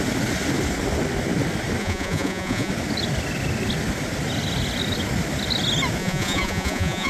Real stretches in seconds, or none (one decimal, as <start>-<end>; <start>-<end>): 0.0-1.8; 2.7-6.0

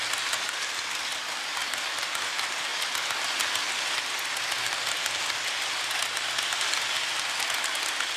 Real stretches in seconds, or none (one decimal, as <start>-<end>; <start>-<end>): 0.0-8.2

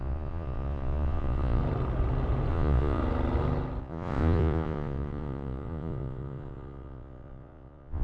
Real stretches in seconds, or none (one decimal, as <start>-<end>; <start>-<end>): 1.6-2.5; 3.0-3.8

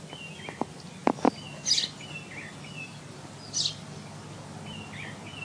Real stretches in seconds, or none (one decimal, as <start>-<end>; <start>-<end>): 0.0-5.4

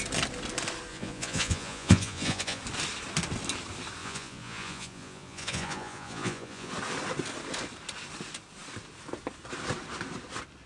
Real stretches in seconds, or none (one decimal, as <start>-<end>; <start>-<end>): 0.0-0.9; 2.6-4.0; 6.7-10.7

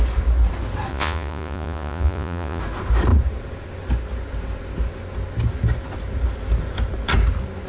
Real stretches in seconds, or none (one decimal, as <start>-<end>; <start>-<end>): 0.0-0.9; 2.6-7.7

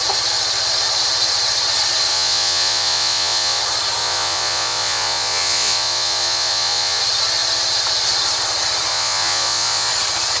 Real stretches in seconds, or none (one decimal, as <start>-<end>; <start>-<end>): 0.0-2.1; 3.6-4.0; 7.0-8.9; 9.9-10.4

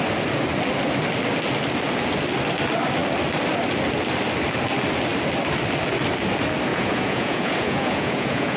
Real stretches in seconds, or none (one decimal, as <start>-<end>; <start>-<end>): 0.0-6.7